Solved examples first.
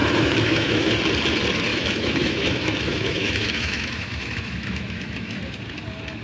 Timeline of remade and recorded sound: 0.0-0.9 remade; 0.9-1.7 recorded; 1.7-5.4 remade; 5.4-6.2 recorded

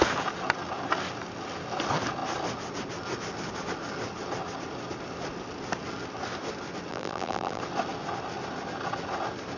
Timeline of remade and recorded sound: 0.0-6.9 recorded; 6.9-7.6 remade; 7.6-9.6 recorded

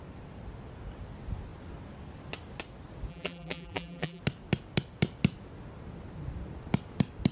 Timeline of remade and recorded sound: 0.0-3.1 recorded; 3.1-4.2 remade; 4.2-7.3 recorded

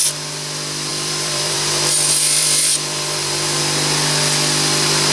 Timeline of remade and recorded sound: 0.0-0.9 recorded; 0.9-3.6 remade; 3.6-5.1 recorded